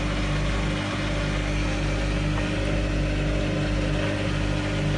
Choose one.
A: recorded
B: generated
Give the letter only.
A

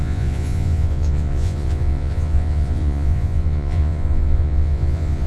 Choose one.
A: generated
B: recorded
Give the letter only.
A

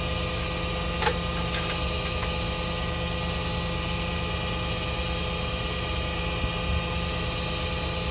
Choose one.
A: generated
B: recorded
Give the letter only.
B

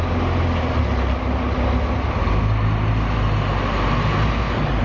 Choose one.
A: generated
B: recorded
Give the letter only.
B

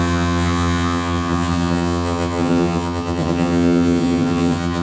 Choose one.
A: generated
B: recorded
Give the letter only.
A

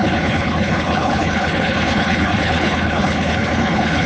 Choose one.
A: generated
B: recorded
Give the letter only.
A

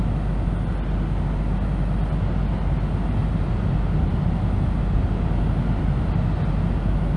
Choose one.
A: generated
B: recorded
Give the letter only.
B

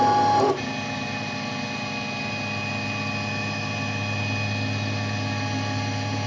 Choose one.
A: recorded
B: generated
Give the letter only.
A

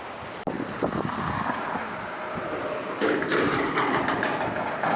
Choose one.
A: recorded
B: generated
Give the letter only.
A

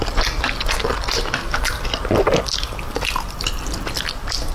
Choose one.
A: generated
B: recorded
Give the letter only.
B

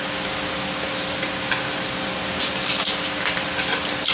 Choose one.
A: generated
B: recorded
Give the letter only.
B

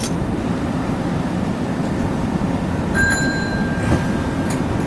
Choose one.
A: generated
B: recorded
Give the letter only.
A